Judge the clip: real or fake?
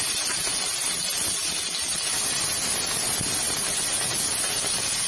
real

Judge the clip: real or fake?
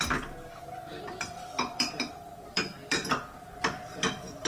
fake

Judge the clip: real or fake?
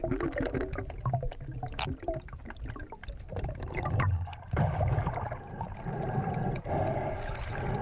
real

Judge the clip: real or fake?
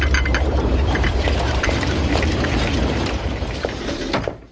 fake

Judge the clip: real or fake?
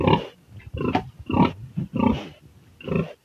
real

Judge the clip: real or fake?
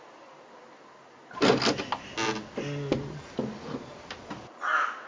real